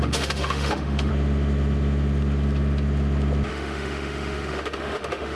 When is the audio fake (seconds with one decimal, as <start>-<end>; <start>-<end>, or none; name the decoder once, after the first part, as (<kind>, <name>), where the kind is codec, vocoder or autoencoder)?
0.0-1.1 (autoencoder, DAC-VAE); 3.5-5.4